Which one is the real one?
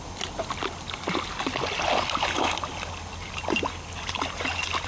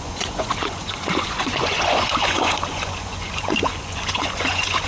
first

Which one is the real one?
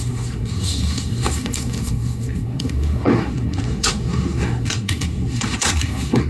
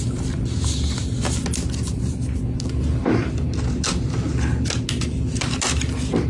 second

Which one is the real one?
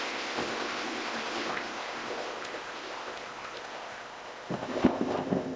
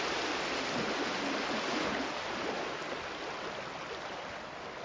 second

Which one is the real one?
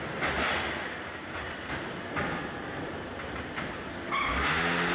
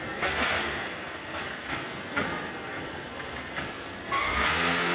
first